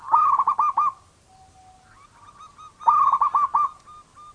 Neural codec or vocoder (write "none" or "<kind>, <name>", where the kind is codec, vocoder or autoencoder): none